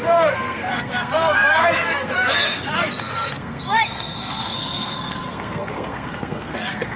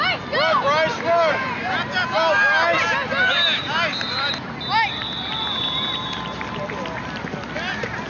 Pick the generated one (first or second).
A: first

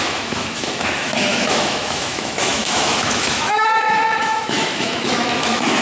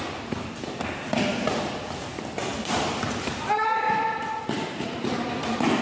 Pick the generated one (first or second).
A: first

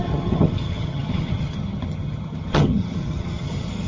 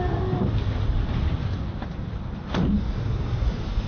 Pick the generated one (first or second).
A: first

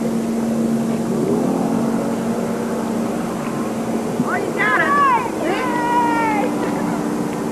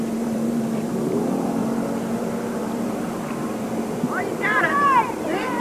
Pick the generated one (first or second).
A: second